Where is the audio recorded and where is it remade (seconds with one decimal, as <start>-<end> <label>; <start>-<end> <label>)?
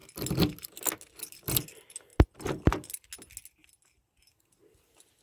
0.0-5.2 recorded